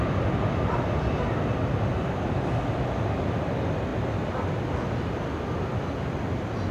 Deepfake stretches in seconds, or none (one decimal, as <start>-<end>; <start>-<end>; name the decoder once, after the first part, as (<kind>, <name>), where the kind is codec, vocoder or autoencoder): none